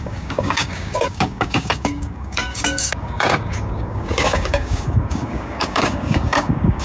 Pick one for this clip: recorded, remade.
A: remade